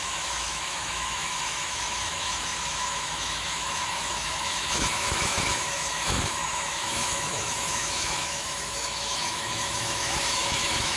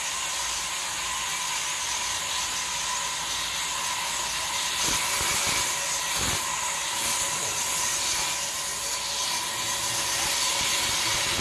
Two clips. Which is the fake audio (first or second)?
first